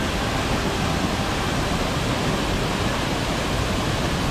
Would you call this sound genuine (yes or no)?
yes